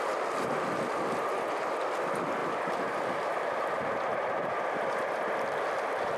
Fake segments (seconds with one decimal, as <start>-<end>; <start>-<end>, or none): 2.4-6.2